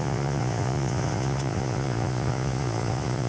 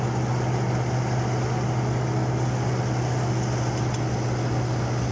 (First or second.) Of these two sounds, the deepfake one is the first